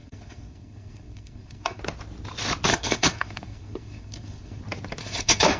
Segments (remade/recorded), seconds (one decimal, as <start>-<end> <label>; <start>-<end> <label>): 0.0-1.8 remade; 1.8-2.7 recorded; 2.7-4.6 remade; 4.6-5.0 recorded; 5.0-5.6 remade